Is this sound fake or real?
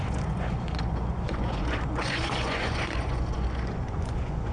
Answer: fake